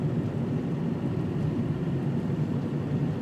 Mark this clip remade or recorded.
recorded